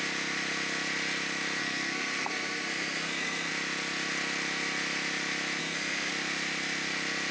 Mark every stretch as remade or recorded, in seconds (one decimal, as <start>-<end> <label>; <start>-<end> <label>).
0.0-1.6 recorded; 1.6-3.5 remade; 3.5-5.6 recorded; 5.6-6.1 remade; 6.1-7.3 recorded

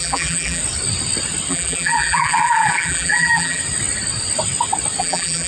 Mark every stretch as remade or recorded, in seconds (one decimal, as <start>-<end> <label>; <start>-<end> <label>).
0.0-0.6 remade; 0.6-1.5 recorded; 1.5-3.6 remade; 3.6-5.0 recorded; 5.0-5.5 remade

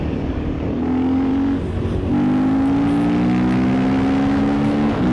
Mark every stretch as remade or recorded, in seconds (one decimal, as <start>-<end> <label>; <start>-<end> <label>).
0.0-1.3 remade; 1.3-4.4 recorded; 4.4-5.1 remade

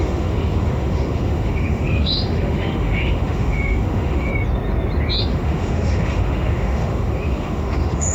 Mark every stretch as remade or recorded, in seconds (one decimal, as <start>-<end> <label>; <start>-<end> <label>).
0.0-4.3 remade; 4.3-5.2 recorded; 5.2-8.1 remade

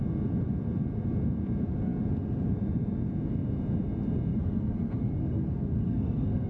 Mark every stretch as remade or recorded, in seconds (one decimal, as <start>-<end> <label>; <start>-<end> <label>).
0.0-4.3 recorded; 4.3-6.5 remade

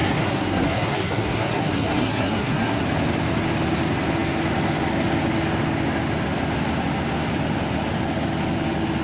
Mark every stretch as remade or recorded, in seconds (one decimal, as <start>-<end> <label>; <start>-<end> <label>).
0.0-2.8 remade; 2.8-9.0 recorded